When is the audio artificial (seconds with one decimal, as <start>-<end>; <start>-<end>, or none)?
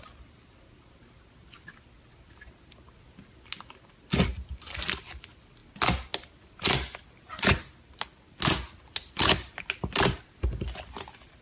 none